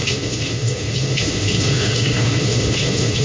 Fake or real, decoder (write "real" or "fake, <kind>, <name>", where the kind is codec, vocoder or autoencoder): fake, autoencoder, DAC-VAE